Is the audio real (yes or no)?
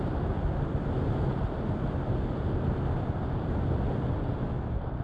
yes